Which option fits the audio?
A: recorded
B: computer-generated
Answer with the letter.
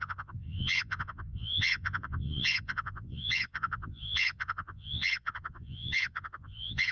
B